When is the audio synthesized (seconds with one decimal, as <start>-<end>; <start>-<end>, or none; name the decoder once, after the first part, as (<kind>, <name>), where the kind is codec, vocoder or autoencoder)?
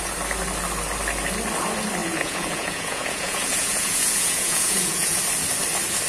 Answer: 2.0-5.2 (vocoder, Vocos)